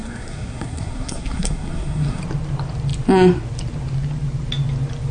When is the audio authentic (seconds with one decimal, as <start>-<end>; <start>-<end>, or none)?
2.2-5.1